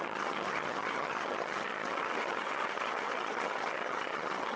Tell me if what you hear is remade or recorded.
remade